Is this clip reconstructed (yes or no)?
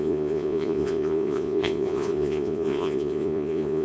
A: yes